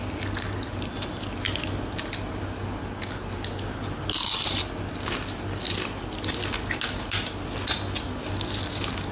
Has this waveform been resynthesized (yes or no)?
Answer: no